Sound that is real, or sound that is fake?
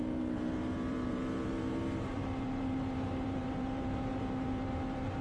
fake